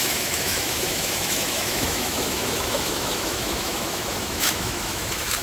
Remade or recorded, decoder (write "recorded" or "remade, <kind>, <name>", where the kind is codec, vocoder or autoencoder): remade, autoencoder, DAC-VAE